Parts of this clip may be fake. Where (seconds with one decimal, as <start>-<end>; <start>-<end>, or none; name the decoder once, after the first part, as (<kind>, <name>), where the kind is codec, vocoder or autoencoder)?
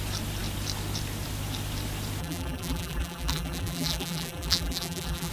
2.2-5.3 (vocoder, BigVGAN v2)